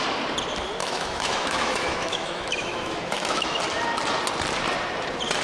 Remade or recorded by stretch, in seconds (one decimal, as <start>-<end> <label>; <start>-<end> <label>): 0.0-0.8 recorded; 0.8-3.6 remade; 3.6-5.4 recorded